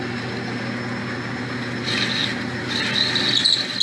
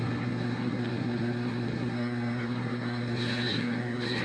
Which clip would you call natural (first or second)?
first